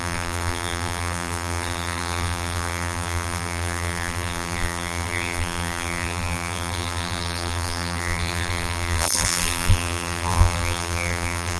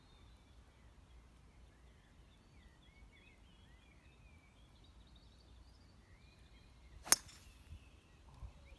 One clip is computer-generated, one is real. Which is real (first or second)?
second